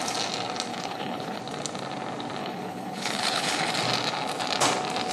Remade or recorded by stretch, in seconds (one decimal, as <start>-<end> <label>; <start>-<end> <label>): 0.0-0.7 recorded; 0.7-1.4 remade; 1.4-2.4 recorded; 2.4-3.7 remade; 3.7-5.1 recorded

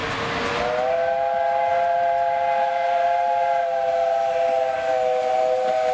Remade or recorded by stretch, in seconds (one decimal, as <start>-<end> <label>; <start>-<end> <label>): 0.0-5.9 recorded

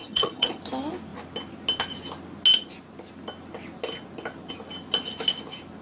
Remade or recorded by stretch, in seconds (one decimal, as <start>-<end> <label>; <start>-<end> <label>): 0.0-0.6 remade; 0.6-5.8 recorded

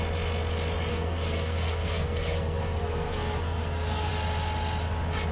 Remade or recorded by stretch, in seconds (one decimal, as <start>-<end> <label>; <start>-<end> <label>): 0.0-0.9 recorded; 0.9-4.1 remade; 4.1-5.3 recorded